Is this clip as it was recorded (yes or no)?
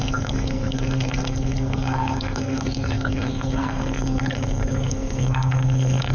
no